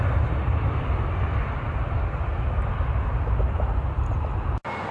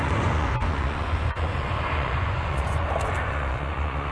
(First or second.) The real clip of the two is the first